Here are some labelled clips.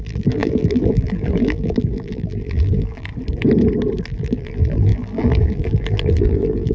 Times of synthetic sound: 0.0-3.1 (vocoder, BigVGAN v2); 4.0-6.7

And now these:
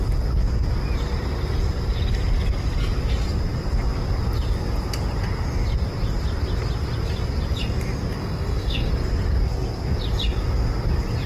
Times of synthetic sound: 8.2-8.9 (codec, SNAC)

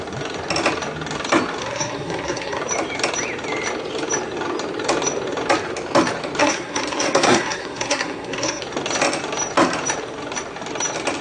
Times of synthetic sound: 1.6-2.6 (codec, SNAC); 6.4-8.6

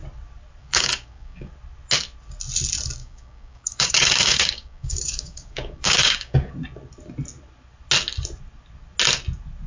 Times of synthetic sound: 0.6-1.5 (codec, DAC); 3.0-6.5

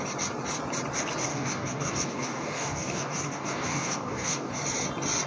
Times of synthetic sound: 1.3-4.5 (codec, DAC)